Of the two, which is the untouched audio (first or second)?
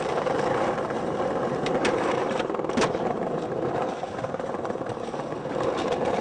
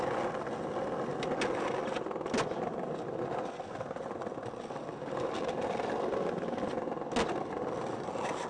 second